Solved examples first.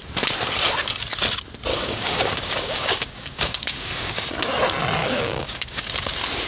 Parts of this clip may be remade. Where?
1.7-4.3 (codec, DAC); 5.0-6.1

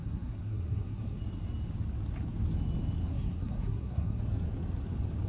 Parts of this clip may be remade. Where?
0.0-1.2 (codec, SNAC); 3.1-4.2

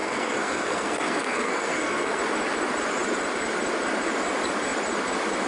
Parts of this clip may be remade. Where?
0.0-2.2 (codec, SNAC)

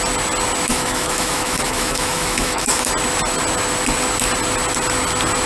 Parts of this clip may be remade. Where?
0.7-2.9 (autoencoder, DAC-VAE)

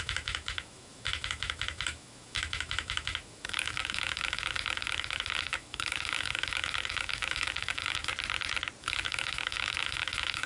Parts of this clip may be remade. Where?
0.0-8.1 (autoencoder, DAC-VAE); 8.8-10.5

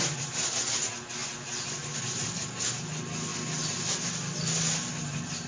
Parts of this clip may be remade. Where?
none

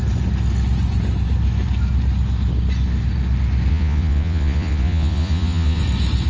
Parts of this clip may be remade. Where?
3.7-5.8 (vocoder, Vocos)